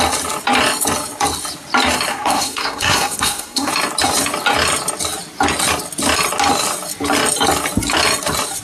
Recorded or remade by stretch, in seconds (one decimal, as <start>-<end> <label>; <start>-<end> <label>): 0.0-2.1 recorded; 2.1-3.7 remade; 3.7-8.6 recorded

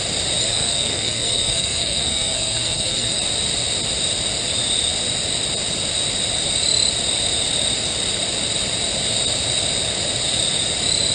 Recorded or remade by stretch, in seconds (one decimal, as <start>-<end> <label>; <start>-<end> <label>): 0.0-0.4 recorded; 0.4-3.2 remade; 3.2-11.1 recorded

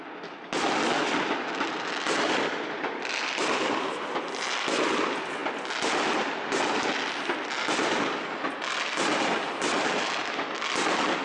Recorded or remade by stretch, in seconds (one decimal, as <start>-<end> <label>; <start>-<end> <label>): 0.0-11.2 recorded

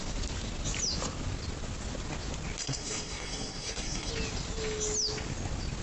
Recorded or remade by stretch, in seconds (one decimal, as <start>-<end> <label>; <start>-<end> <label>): 0.0-2.6 recorded; 2.6-4.1 remade; 4.1-5.8 recorded

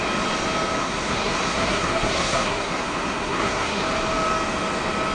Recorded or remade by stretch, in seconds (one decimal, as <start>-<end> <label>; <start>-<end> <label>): 0.0-0.8 recorded; 0.8-3.8 remade; 3.8-5.1 recorded

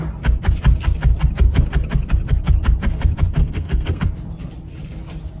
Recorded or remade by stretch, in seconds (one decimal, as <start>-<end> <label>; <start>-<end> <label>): 0.0-3.4 recorded; 3.4-4.0 remade; 4.0-5.4 recorded

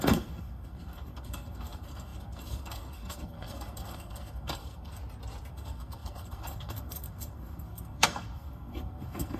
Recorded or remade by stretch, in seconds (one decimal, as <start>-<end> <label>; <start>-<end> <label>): 0.0-5.0 remade; 5.0-5.5 recorded; 5.5-9.4 remade